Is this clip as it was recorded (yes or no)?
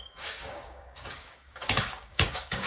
no